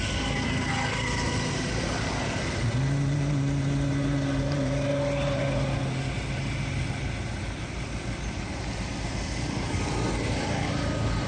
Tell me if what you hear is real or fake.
real